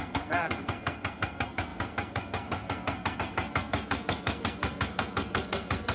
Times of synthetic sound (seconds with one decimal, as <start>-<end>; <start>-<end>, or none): 0.0-5.9